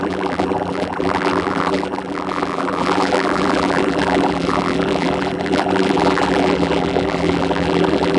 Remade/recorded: remade